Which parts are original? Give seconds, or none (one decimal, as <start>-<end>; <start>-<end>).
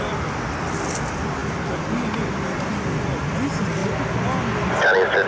0.0-5.3